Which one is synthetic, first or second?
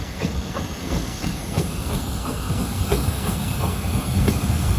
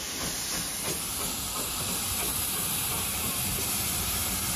first